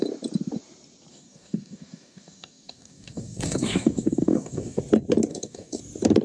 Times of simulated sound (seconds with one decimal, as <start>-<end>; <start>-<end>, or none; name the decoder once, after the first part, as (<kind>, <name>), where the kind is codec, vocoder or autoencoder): 1.1-4.8 (codec, DAC); 5.3-5.8